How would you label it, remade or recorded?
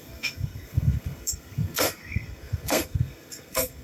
remade